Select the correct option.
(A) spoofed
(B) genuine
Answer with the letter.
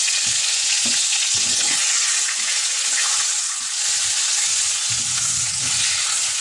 A